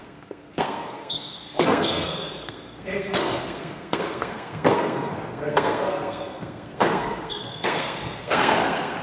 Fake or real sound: fake